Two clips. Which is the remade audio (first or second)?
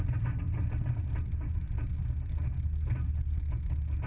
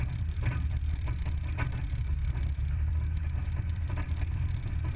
second